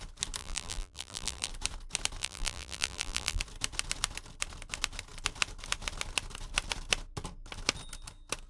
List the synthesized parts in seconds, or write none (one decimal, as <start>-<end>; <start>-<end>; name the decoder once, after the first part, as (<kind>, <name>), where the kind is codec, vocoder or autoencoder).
0.4-1.5 (vocoder, BigVGAN v2); 2.2-3.4